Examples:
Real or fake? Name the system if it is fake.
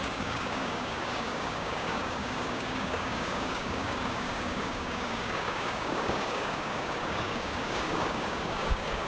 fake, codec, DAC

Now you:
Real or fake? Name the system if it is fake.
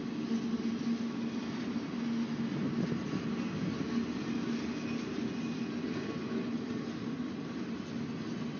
real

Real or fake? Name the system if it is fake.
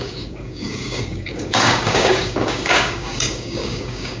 fake, codec, DAC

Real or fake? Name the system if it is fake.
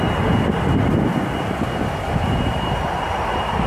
real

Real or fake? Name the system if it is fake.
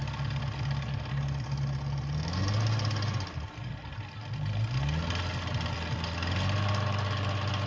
real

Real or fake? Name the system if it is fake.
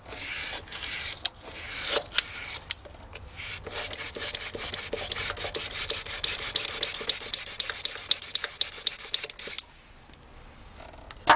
real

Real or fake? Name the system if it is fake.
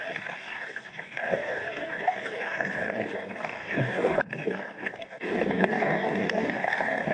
fake, codec, DAC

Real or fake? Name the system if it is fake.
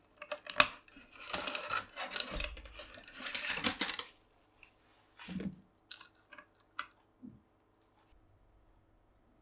real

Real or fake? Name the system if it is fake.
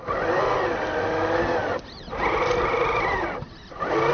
real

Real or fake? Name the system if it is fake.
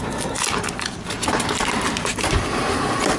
real